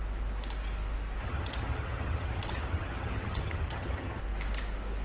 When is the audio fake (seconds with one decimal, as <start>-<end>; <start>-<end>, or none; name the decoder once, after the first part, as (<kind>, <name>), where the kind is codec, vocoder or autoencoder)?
1.2-4.2 (vocoder, HiFi-GAN)